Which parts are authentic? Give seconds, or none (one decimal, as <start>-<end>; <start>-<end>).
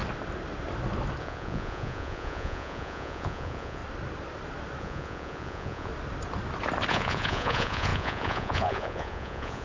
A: 0.0-1.2; 3.8-4.8; 5.9-6.9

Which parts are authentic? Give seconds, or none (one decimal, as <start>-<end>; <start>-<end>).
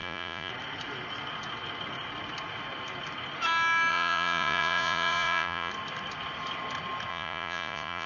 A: 0.5-3.9; 5.7-7.1